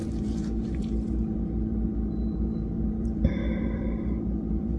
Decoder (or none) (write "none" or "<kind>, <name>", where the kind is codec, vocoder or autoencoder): vocoder, BigVGAN v2